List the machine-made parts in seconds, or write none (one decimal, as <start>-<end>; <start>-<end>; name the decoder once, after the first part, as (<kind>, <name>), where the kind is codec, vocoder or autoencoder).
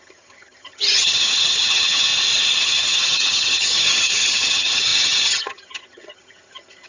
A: 0.0-2.1 (vocoder, HiFi-GAN); 2.6-6.9